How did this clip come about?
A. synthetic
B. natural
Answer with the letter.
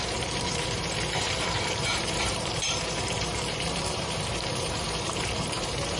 A